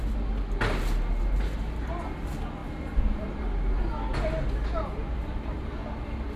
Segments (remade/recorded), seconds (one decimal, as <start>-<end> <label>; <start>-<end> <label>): 0.0-6.4 recorded